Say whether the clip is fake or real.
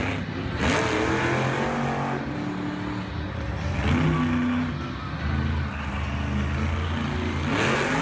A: real